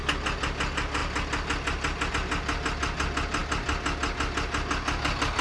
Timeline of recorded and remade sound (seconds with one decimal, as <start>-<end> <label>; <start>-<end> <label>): 0.0-5.4 recorded